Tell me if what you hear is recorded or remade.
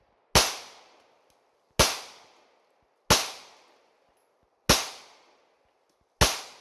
recorded